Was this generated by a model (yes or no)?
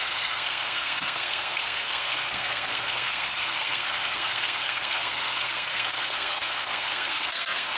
yes